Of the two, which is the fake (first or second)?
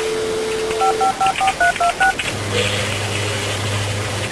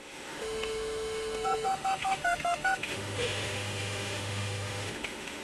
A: second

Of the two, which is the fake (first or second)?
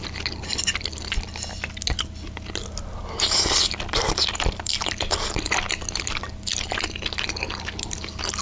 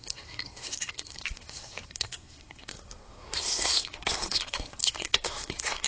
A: second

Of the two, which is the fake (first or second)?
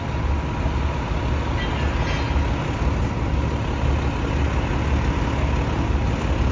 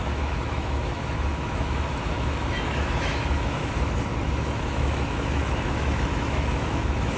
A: second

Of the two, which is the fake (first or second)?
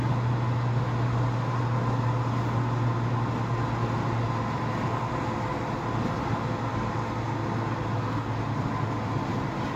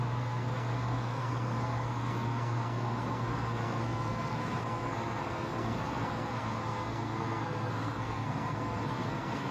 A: second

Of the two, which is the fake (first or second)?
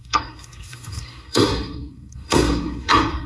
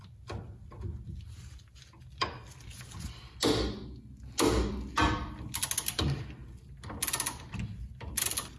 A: first